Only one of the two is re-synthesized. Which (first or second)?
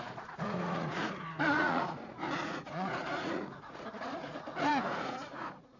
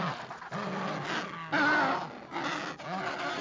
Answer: first